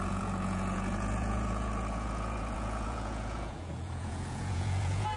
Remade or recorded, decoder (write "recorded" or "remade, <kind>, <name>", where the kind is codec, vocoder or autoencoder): remade, vocoder, Vocos